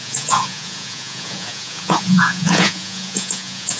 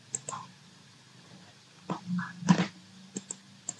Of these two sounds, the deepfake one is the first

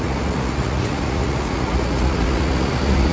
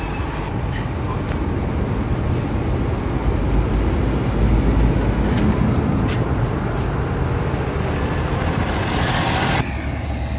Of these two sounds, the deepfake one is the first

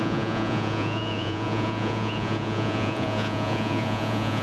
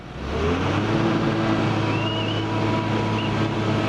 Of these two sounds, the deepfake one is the first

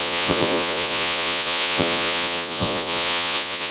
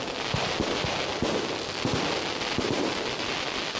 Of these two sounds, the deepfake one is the first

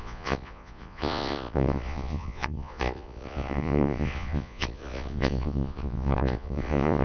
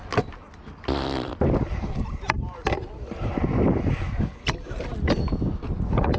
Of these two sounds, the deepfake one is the first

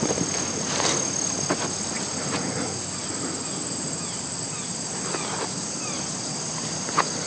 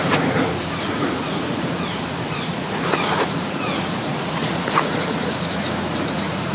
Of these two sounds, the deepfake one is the second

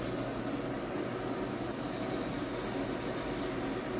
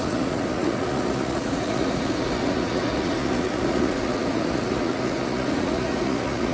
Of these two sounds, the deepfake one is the second